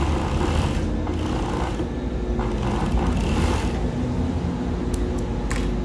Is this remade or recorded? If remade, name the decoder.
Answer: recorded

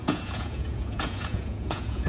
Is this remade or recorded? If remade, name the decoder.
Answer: remade, vocoder, Vocos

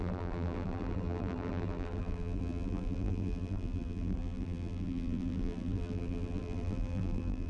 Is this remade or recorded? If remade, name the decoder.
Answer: remade, vocoder, BigVGAN v2